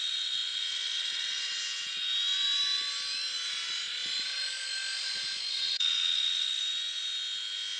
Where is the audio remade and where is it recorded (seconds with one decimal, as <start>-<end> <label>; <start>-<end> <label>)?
0.0-1.6 remade; 1.6-5.5 recorded; 5.5-6.6 remade; 6.6-7.8 recorded